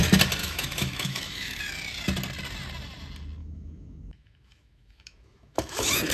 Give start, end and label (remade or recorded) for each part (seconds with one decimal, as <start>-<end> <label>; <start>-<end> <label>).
0.0-0.4 recorded; 0.4-1.6 remade; 1.6-3.4 recorded; 3.4-6.1 remade